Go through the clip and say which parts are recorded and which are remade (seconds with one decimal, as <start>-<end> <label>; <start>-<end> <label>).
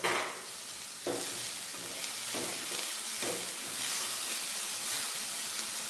0.0-3.7 recorded; 3.7-4.4 remade; 4.4-5.9 recorded